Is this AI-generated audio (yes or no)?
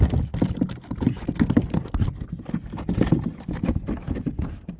no